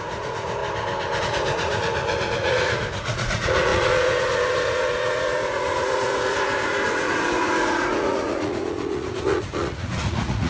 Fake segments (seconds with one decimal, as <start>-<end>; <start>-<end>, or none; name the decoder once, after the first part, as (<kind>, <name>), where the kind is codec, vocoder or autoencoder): 0.0-0.6 (vocoder, Vocos); 1.2-10.5